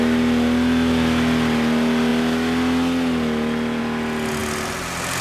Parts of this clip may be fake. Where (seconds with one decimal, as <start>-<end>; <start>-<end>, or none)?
none